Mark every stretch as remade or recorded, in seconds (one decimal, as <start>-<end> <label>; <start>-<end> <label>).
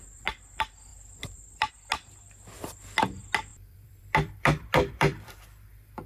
0.0-0.9 recorded; 0.9-1.7 remade; 1.7-3.5 recorded; 3.5-6.1 remade